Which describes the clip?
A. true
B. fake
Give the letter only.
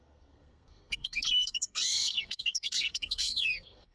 B